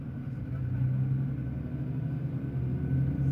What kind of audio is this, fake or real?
real